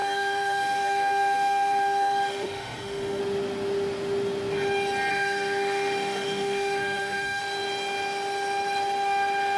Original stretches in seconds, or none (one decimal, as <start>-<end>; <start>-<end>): 3.2-5.1; 7.4-9.6